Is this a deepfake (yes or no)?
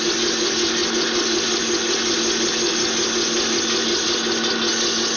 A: no